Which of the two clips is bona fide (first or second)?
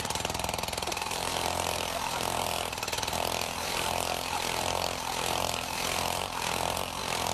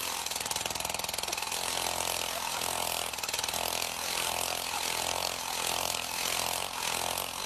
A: second